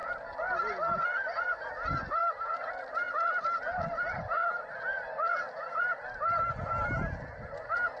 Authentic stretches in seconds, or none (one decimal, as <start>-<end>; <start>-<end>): 0.0-8.0